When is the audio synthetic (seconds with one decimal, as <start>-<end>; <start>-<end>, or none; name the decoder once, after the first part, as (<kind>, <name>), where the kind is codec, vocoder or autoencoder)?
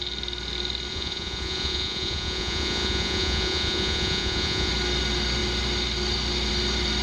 0.9-4.7 (vocoder, Vocos)